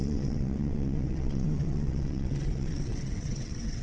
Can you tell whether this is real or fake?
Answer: fake